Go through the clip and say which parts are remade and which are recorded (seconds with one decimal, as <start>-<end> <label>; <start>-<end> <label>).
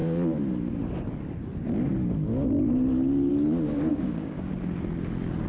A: 0.0-3.9 recorded; 3.9-4.5 remade; 4.5-5.5 recorded